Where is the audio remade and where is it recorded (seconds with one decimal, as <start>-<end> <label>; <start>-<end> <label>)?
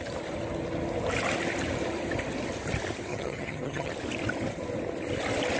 0.0-3.1 recorded; 3.1-3.9 remade; 3.9-5.6 recorded